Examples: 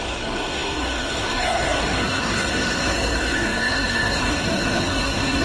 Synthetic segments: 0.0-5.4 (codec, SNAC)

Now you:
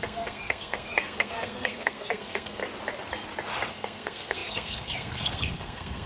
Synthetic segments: 0.0-2.6 (codec, SNAC); 3.7-6.1